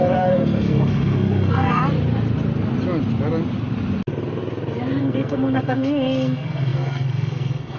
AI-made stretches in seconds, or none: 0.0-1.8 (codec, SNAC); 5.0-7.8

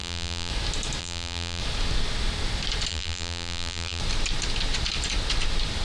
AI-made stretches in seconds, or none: 0.0-0.5 (vocoder, BigVGAN v2); 1.0-1.6; 2.9-4.0

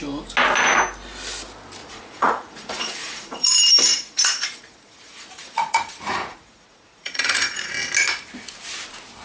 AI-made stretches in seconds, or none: 1.8-3.5 (vocoder, Vocos); 3.9-7.7

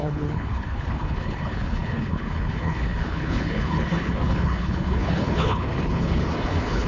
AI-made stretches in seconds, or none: 0.0-6.9 (codec, HILCodec)